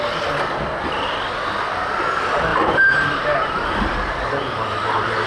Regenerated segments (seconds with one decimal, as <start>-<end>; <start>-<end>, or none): 2.5-4.4